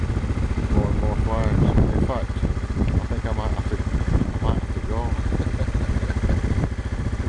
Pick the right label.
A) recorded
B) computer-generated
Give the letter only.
A